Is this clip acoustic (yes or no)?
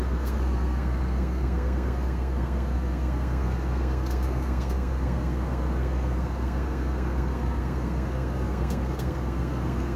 no